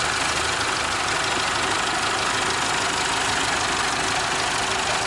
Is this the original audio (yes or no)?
yes